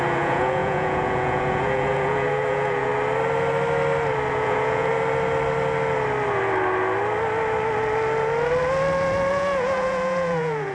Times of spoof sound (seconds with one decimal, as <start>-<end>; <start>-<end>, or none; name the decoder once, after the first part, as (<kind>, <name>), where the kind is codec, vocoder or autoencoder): 0.0-2.9 (vocoder, Vocos); 4.3-4.9; 9.3-10.7